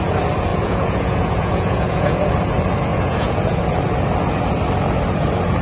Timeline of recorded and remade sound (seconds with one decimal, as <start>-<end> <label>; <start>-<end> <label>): 0.0-0.5 recorded; 0.5-2.3 remade; 2.3-2.9 recorded; 2.9-3.6 remade; 3.6-5.6 recorded